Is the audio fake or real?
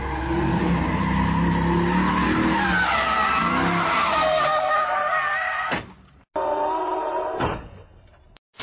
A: real